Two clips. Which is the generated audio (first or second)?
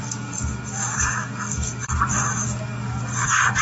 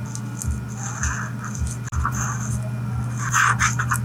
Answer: first